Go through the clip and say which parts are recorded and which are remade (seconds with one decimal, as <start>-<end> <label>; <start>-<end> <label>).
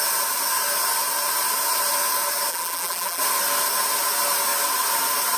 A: 0.0-2.5 recorded; 2.5-3.2 remade; 3.2-5.4 recorded